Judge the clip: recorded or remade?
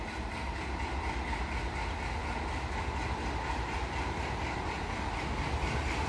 recorded